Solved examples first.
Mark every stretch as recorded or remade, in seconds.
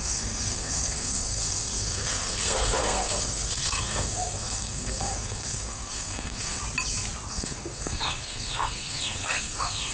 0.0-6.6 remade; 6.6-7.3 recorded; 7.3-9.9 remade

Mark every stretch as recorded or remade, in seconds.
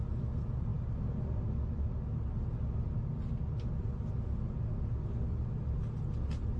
0.0-6.6 recorded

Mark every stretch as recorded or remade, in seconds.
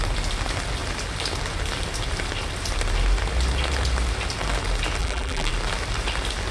0.0-5.0 recorded; 5.0-5.5 remade; 5.5-6.5 recorded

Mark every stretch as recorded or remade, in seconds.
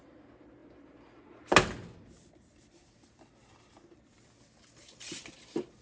0.0-5.8 recorded